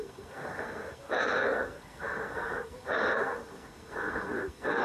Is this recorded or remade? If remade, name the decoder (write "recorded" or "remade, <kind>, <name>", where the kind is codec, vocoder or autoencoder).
remade, codec, SNAC